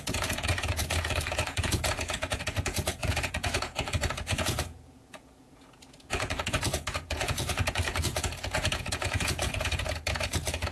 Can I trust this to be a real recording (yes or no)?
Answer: no